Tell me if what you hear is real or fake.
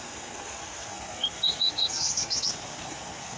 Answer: fake